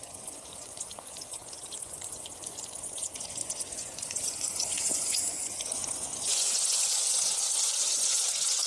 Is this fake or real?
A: fake